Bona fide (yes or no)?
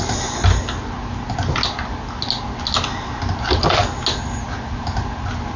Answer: yes